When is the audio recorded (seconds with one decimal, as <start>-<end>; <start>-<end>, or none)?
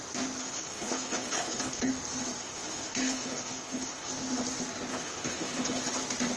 0.0-0.4; 1.9-2.4; 4.1-4.9; 5.8-6.4